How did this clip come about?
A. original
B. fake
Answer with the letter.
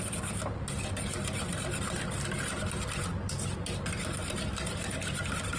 A